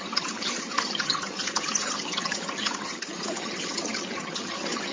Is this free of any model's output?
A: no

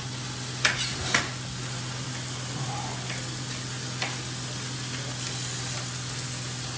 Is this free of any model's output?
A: yes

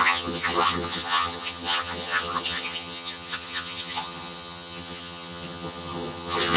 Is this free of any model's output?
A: no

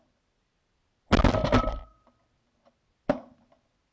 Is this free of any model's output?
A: yes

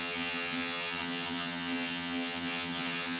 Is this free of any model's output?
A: no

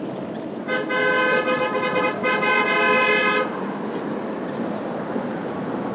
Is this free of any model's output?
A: yes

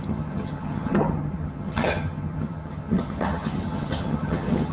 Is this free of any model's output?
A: no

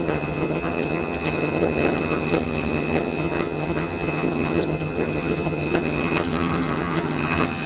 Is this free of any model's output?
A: no